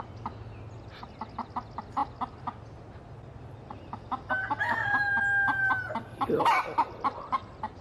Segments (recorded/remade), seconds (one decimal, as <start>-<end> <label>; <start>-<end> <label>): 0.0-7.8 recorded